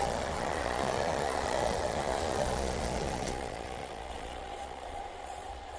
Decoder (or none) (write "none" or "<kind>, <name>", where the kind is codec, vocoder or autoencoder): vocoder, Vocos